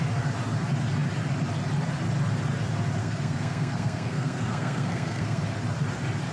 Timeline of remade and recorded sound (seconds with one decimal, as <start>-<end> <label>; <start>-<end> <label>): 0.0-3.0 recorded; 3.0-5.4 remade; 5.4-6.3 recorded